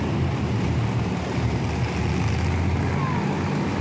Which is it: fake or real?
real